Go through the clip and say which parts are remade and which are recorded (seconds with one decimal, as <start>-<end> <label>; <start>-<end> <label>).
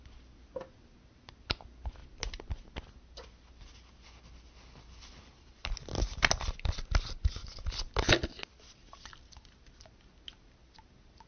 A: 0.0-11.3 recorded